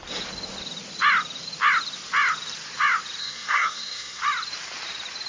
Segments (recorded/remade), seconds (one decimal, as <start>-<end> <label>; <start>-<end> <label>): 0.0-3.2 recorded; 3.2-4.2 remade; 4.2-5.3 recorded